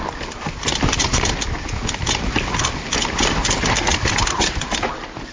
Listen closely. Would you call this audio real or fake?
real